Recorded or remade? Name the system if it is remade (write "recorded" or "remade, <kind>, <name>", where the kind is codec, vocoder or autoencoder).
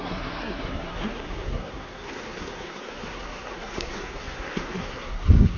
remade, codec, SNAC